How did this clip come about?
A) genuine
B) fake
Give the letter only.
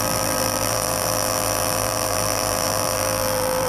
B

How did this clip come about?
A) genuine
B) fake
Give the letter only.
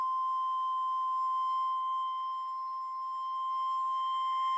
A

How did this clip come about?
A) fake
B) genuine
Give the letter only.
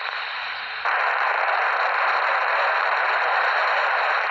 A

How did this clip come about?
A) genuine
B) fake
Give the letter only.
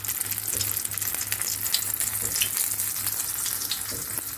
A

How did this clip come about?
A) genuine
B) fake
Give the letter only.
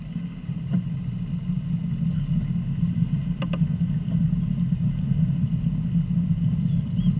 A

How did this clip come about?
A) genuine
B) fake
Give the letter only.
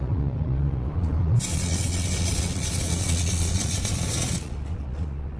B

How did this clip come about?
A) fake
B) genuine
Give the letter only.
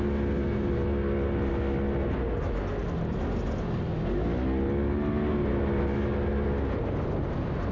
B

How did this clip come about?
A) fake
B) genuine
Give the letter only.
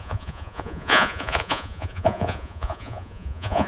A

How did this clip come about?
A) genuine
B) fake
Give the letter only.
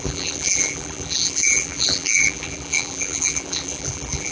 B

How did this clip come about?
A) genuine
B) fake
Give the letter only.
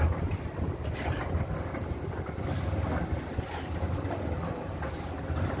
A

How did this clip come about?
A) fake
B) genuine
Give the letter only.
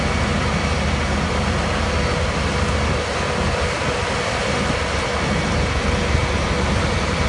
B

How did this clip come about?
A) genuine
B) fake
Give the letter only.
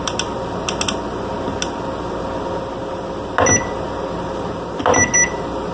A